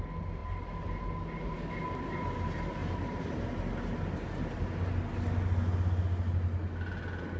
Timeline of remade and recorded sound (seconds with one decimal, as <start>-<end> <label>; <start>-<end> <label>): 0.0-7.4 recorded